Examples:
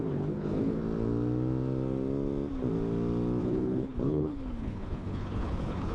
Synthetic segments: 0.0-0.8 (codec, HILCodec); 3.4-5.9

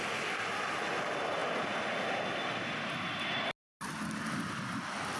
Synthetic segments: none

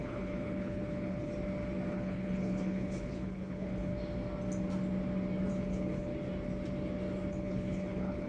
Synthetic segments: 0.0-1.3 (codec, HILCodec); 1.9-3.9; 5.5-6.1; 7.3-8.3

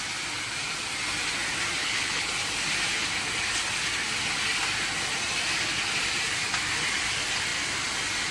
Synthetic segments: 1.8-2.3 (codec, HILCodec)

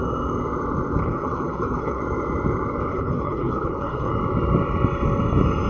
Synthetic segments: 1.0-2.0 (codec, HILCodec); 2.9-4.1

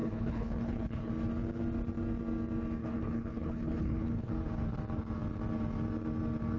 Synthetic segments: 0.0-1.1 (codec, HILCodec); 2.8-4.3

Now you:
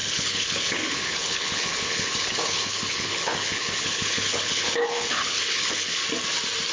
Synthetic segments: 0.0-6.0 (codec, HILCodec)